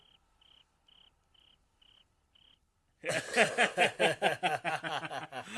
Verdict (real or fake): real